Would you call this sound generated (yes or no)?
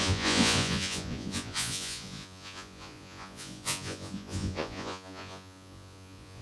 yes